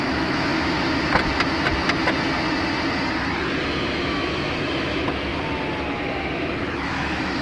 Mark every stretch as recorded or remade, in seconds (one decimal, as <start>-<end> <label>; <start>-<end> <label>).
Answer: 0.0-0.5 remade; 0.5-4.1 recorded; 4.1-5.3 remade; 5.3-6.8 recorded; 6.8-7.4 remade